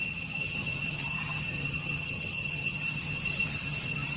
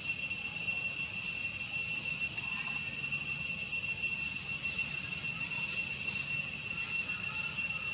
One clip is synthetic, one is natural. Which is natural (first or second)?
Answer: second